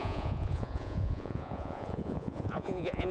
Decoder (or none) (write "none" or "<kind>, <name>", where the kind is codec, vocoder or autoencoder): vocoder, Vocos